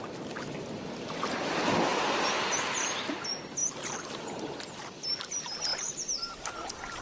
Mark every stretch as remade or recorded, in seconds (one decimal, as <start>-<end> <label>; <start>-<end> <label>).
0.0-3.6 recorded; 3.6-4.4 remade; 4.4-5.7 recorded; 5.7-7.0 remade